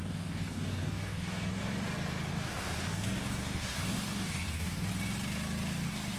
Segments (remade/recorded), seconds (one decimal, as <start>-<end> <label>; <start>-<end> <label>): 0.0-1.6 remade; 1.6-2.3 recorded; 2.3-4.9 remade; 4.9-6.2 recorded